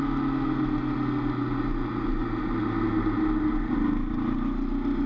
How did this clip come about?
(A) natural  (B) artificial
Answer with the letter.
A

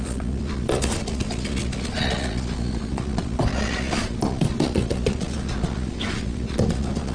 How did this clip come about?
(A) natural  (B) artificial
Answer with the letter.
B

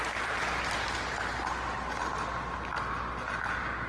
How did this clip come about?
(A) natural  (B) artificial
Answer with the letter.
A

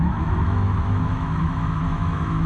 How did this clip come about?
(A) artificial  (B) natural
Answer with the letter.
A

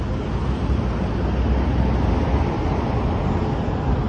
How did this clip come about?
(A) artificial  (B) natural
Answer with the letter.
B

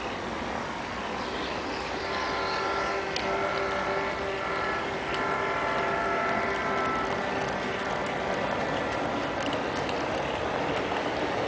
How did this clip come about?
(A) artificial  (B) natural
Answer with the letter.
B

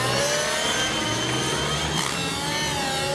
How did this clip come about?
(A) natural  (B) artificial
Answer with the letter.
A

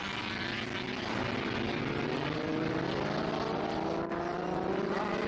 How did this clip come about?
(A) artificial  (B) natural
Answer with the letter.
B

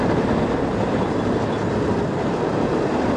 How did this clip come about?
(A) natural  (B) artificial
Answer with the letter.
A